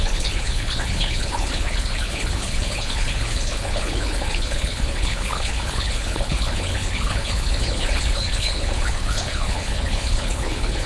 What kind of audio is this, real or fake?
fake